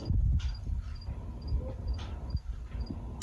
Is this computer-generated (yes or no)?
no